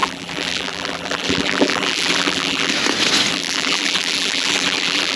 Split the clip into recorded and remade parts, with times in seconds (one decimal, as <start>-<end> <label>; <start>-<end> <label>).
0.0-2.7 remade; 2.7-3.3 recorded; 3.3-5.2 remade